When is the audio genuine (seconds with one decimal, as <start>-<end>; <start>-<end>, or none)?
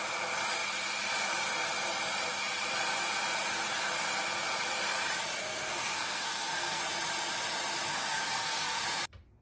0.0-5.4; 6.8-7.9; 8.8-9.4